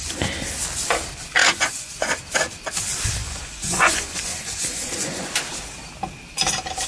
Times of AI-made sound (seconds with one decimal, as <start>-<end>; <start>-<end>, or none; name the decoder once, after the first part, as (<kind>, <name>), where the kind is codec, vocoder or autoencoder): 1.4-2.1 (vocoder, Vocos); 3.2-5.3